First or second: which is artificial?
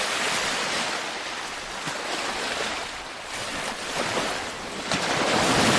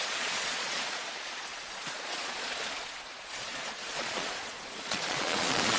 second